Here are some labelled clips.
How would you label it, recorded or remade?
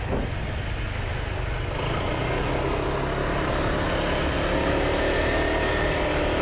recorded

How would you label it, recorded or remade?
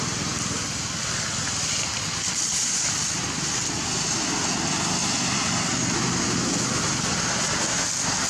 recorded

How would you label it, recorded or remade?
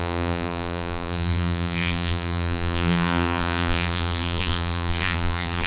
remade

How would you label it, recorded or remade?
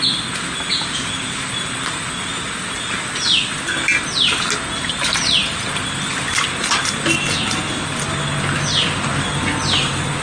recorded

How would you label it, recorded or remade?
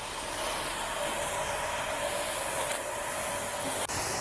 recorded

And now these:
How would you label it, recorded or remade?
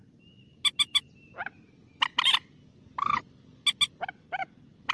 recorded